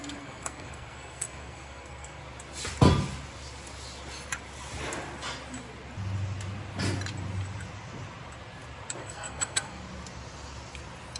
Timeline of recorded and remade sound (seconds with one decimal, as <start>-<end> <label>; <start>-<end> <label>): 0.0-2.2 remade; 2.2-9.0 recorded; 9.0-9.8 remade; 9.8-11.2 recorded